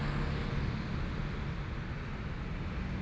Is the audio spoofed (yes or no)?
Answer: no